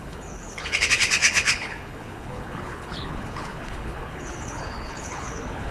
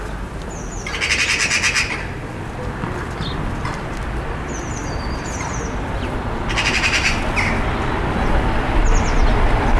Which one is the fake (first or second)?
first